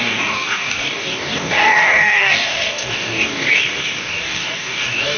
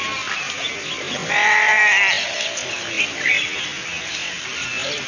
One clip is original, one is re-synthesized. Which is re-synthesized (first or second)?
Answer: first